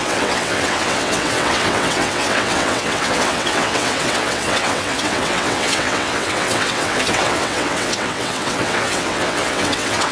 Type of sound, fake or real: fake